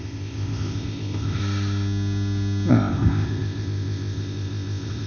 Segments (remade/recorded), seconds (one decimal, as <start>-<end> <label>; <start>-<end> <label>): 0.0-1.4 remade; 1.4-2.7 recorded; 2.7-5.1 remade